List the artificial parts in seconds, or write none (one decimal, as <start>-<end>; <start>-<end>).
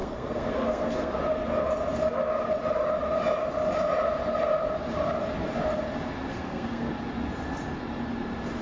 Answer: 0.0-1.2; 6.3-6.9